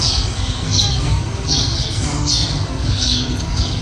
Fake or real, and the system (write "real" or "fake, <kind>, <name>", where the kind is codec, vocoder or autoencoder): fake, codec, SNAC